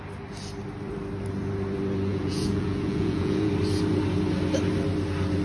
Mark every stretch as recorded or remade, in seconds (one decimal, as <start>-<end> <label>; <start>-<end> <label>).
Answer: 0.0-2.1 recorded; 2.1-3.5 remade; 3.5-5.4 recorded